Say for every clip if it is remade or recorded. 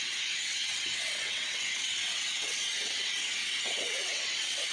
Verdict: remade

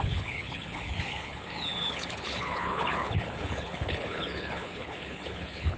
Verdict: remade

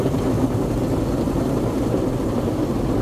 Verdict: recorded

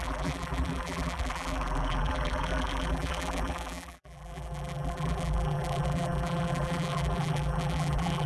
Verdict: remade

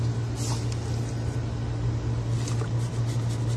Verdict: recorded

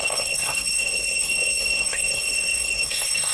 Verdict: remade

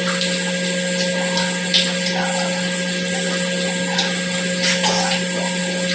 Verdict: recorded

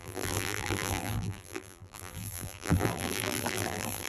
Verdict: remade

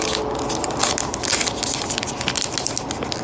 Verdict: recorded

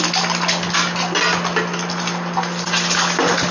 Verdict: recorded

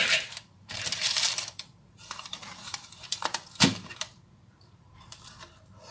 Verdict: remade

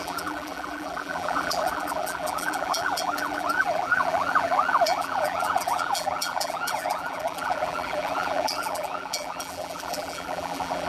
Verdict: remade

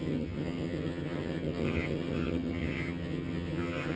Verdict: remade